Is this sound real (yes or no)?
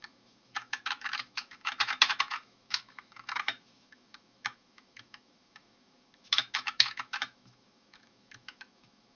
no